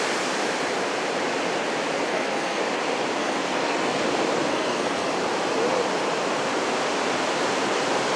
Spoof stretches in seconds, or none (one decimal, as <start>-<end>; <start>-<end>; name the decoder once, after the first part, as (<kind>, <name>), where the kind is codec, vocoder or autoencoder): 2.1-2.6 (codec, SNAC); 3.2-4.0; 4.5-5.1